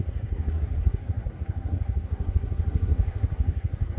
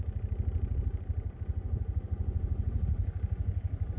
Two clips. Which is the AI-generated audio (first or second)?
first